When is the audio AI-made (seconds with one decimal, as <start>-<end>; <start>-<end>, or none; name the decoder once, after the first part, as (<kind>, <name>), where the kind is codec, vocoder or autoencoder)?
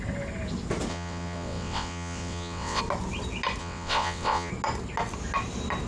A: 0.9-2.8 (vocoder, WaveNeXt); 3.6-4.5